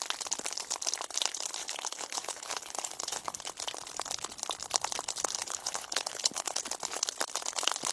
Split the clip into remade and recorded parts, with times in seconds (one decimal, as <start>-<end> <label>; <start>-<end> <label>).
0.0-1.6 recorded; 1.6-3.4 remade; 3.4-5.4 recorded; 5.4-6.6 remade; 6.6-7.9 recorded